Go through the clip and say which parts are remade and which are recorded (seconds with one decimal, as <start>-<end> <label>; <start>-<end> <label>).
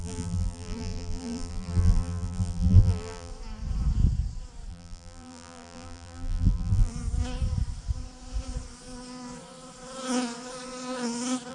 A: 0.0-3.3 remade; 3.3-4.7 recorded; 4.7-6.9 remade; 6.9-11.5 recorded